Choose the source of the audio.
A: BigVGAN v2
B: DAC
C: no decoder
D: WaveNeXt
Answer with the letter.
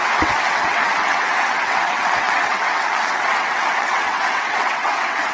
D